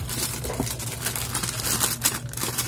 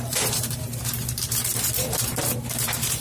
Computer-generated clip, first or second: second